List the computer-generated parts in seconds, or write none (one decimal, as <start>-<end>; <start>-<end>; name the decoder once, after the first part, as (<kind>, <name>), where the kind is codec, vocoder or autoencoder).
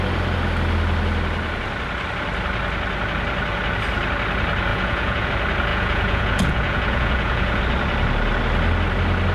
4.7-5.3 (vocoder, Vocos); 5.7-7.6